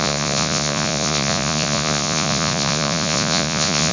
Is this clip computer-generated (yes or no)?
yes